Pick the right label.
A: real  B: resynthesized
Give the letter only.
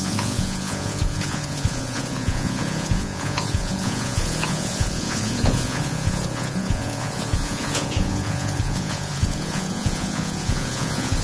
B